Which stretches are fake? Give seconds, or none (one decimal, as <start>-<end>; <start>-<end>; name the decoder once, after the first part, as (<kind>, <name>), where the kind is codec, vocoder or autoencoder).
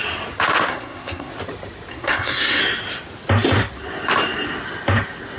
0.7-1.3 (codec, SNAC); 1.9-2.6